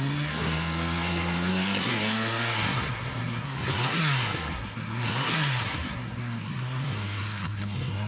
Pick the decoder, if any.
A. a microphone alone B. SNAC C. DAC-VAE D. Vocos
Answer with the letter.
B